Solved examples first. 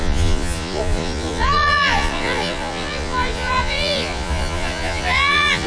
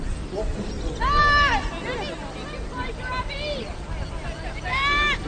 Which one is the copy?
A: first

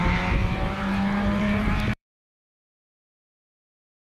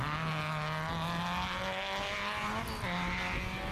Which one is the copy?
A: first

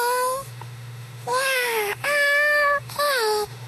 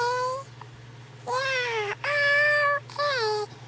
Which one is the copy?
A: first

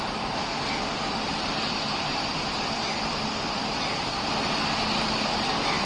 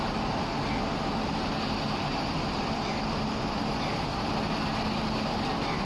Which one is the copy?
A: first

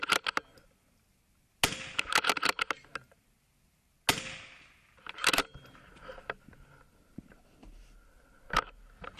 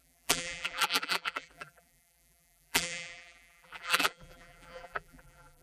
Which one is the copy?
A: second